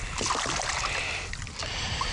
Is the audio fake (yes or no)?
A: no